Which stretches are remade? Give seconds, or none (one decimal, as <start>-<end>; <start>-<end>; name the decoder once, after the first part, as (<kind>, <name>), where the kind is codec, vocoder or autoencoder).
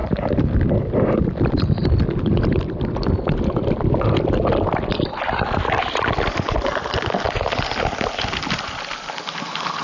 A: 0.0-0.7 (vocoder, BigVGAN v2)